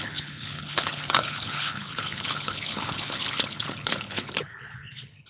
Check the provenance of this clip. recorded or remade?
remade